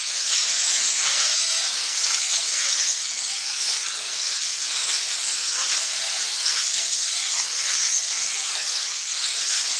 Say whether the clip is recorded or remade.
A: remade